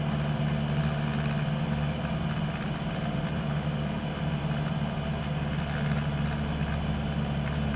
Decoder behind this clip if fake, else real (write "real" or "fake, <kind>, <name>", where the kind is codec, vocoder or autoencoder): real